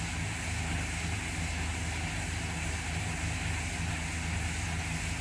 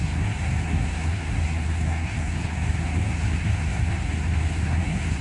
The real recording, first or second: first